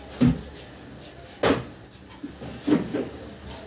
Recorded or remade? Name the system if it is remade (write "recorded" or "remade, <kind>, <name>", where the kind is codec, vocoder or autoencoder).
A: recorded